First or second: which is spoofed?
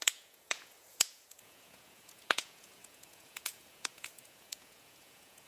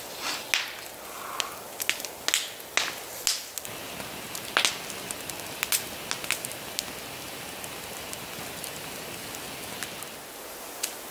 first